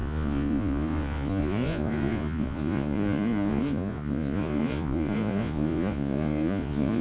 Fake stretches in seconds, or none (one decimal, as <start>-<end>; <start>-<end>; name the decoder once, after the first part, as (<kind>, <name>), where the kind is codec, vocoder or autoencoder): 0.0-7.0 (vocoder, Vocos)